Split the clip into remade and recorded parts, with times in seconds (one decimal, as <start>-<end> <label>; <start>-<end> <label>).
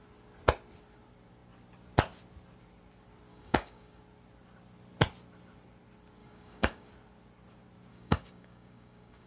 0.0-3.3 recorded; 3.3-4.0 remade; 4.0-6.2 recorded; 6.2-6.9 remade; 6.9-7.9 recorded; 7.9-9.3 remade